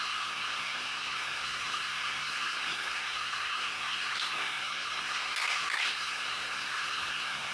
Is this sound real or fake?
fake